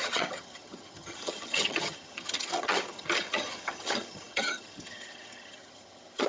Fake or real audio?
fake